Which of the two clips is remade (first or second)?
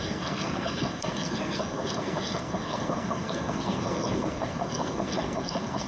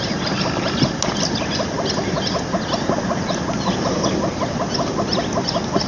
first